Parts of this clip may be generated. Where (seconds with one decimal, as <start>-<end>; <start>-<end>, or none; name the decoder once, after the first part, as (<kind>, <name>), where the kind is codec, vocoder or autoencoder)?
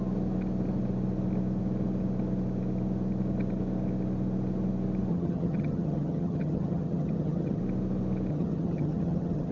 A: 5.1-7.6 (vocoder, HiFi-GAN); 8.3-9.5